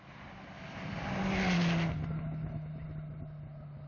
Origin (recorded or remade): recorded